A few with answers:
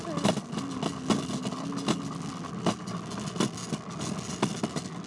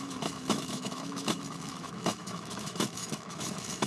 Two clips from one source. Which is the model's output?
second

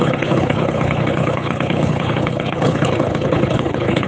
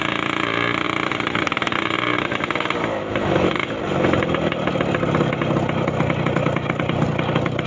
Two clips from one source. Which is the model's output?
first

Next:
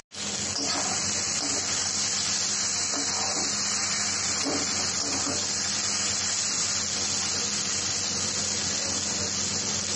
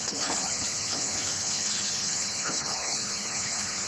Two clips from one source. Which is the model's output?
second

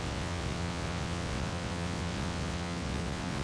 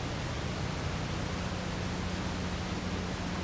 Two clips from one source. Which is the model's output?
first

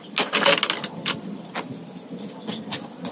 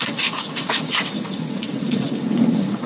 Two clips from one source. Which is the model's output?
second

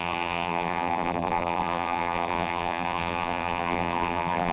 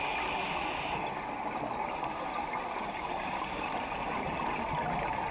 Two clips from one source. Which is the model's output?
first